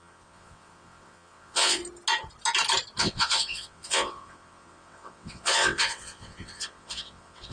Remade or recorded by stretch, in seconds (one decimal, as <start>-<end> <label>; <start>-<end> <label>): 0.0-1.8 remade; 1.8-3.0 recorded; 3.0-7.5 remade

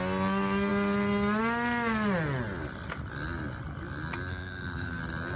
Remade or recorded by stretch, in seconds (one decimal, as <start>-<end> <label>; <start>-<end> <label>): 0.0-4.3 recorded; 4.3-5.0 remade; 5.0-5.4 recorded

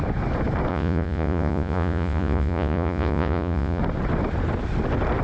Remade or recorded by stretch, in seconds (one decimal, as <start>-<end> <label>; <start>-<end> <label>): 0.0-0.7 recorded; 0.7-3.8 remade; 3.8-5.2 recorded

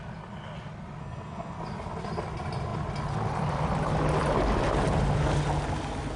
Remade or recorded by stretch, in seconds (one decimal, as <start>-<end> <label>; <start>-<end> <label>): 0.0-1.0 recorded; 1.0-1.6 remade; 1.6-6.2 recorded

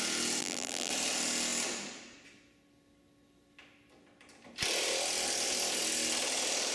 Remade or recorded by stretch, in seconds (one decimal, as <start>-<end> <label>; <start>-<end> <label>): 0.0-0.4 recorded; 0.4-0.9 remade; 0.9-6.7 recorded

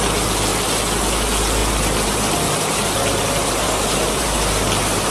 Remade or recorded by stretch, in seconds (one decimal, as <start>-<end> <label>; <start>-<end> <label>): 0.0-1.6 recorded; 1.6-5.1 remade

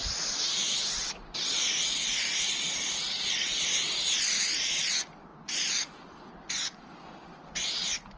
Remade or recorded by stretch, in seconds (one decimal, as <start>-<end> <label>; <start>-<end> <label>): 0.0-8.2 recorded